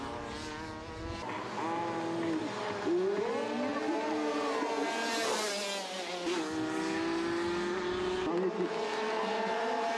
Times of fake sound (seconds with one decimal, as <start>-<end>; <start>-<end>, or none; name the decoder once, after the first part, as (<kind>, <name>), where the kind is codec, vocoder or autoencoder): none